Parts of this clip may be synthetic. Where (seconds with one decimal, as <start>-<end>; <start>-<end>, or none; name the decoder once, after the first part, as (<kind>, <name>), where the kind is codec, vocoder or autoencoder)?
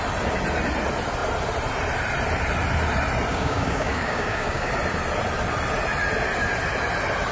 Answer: 3.3-4.7 (codec, DAC)